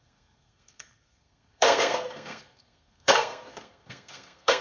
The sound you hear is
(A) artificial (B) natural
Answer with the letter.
A